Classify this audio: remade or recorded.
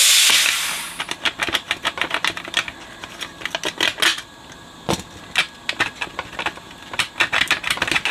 recorded